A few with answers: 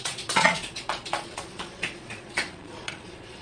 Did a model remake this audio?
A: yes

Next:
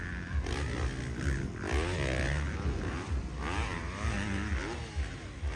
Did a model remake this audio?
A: no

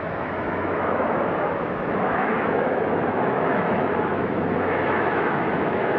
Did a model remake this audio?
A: yes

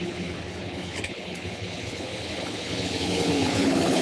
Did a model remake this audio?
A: yes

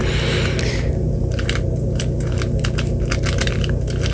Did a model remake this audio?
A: no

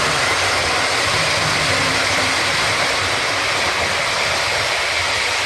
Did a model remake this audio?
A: no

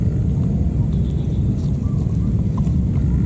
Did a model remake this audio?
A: no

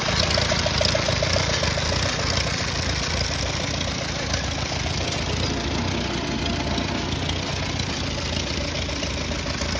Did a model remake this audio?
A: no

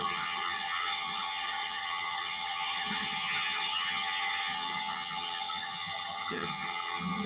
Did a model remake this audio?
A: yes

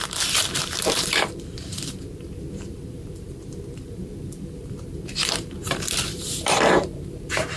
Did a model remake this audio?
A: yes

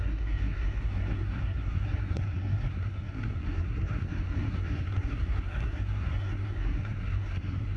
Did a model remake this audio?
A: yes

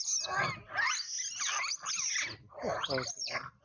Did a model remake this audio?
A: no